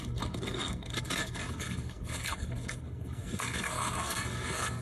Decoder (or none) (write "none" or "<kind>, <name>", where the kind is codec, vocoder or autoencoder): codec, SNAC